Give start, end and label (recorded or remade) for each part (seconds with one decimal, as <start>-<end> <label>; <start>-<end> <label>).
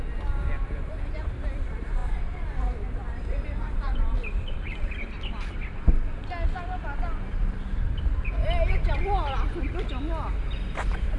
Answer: 0.0-11.2 recorded